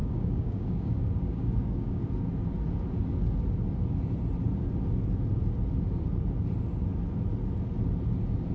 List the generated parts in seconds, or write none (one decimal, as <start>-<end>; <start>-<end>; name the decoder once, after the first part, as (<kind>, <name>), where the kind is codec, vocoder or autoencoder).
0.0-2.0 (codec, DAC)